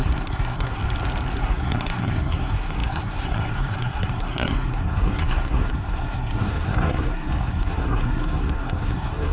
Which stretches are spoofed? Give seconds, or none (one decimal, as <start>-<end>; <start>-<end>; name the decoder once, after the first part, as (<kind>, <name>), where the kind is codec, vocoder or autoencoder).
0.0-0.8 (codec, SNAC); 1.4-9.3